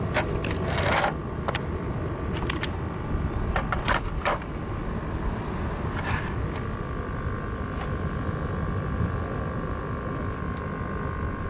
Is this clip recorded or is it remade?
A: recorded